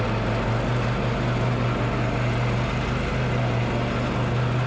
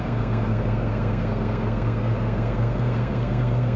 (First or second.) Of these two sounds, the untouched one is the first